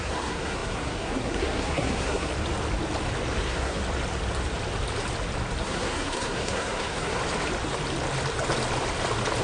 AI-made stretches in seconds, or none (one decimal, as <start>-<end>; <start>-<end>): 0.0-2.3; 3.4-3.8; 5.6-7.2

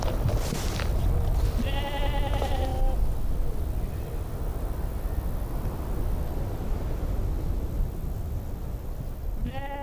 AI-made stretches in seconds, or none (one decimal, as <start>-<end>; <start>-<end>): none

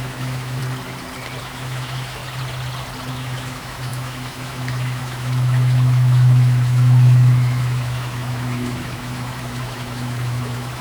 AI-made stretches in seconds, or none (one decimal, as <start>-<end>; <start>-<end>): 0.0-0.6; 1.4-2.2; 3.1-10.8

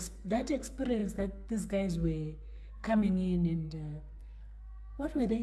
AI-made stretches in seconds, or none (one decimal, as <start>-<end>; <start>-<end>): 0.0-5.4